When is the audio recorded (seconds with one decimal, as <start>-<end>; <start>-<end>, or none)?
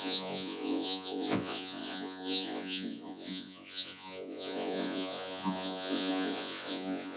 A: none